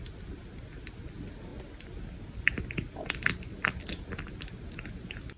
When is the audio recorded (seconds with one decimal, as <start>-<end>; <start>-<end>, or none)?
0.0-5.4